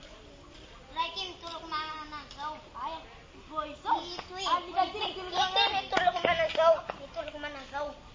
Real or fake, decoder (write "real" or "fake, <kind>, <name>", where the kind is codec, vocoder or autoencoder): real